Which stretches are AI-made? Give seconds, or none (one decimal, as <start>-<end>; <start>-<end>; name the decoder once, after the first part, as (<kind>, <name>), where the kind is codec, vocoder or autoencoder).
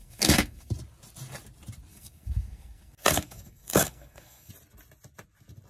0.0-0.7 (codec, SNAC); 1.9-4.5